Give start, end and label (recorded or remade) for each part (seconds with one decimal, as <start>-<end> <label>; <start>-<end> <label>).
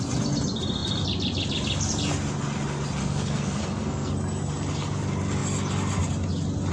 0.0-3.0 recorded; 3.0-4.1 remade; 4.1-6.7 recorded